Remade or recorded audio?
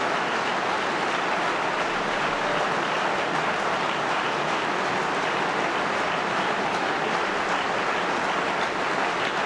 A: recorded